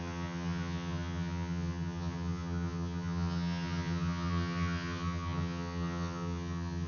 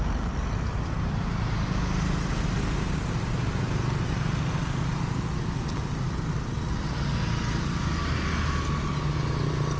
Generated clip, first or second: first